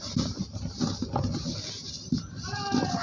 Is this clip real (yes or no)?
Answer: yes